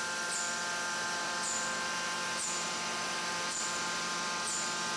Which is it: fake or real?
fake